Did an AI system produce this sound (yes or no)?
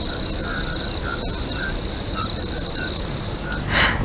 no